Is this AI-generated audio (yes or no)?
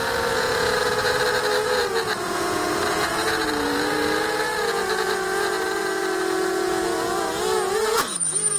yes